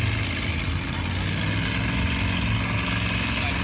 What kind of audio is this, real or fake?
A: real